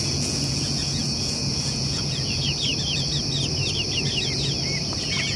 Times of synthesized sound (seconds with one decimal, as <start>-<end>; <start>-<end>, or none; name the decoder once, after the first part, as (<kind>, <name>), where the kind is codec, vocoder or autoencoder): 0.0-2.7 (vocoder, Vocos); 5.0-5.4